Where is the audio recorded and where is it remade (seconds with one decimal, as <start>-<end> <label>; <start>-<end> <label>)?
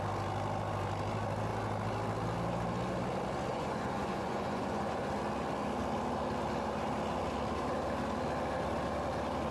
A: 0.0-3.5 recorded; 3.5-5.1 remade; 5.1-9.5 recorded